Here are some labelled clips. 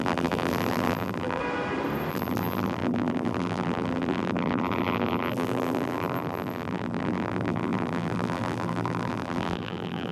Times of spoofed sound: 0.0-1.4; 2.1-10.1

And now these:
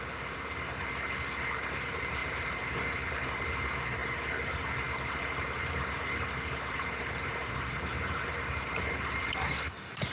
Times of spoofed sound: 0.0-10.1

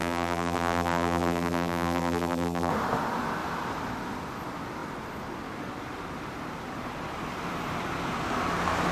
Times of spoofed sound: 0.0-2.7

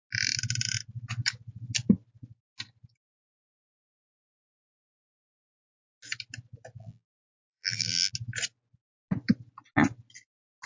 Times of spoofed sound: 6.8-8.1